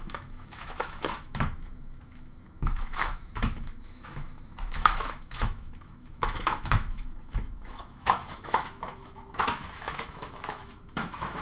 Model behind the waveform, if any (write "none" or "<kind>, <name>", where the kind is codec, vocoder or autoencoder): autoencoder, DAC-VAE